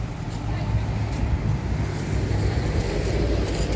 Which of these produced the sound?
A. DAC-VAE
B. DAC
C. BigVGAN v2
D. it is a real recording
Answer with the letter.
D